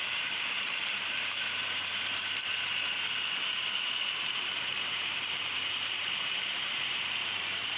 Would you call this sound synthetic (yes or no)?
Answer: yes